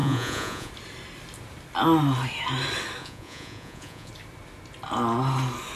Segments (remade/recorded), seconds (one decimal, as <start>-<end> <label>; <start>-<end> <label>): 0.0-0.7 remade; 0.7-3.0 recorded; 3.0-4.1 remade; 4.1-5.8 recorded